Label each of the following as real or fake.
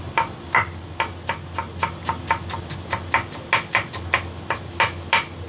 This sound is real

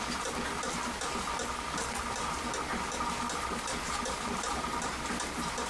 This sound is real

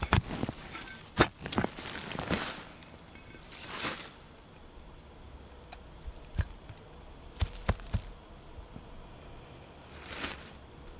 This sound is real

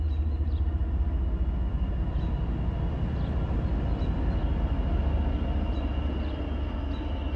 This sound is real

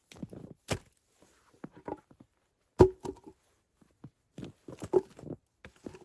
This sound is real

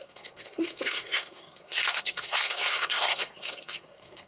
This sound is fake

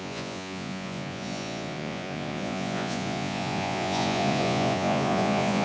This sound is fake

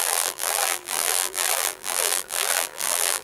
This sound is fake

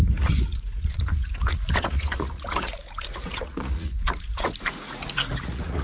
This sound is fake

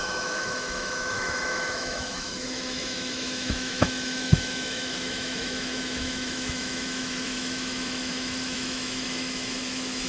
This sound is fake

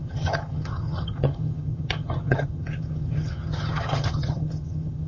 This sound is fake